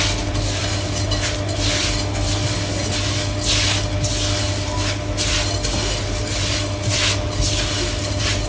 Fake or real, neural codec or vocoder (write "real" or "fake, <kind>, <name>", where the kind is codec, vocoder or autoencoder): real